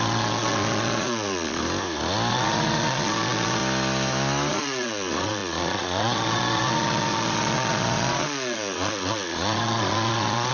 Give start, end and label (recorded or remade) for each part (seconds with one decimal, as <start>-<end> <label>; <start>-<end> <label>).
0.0-1.6 remade; 1.6-2.3 recorded; 2.3-3.6 remade; 3.6-4.5 recorded; 4.5-10.5 remade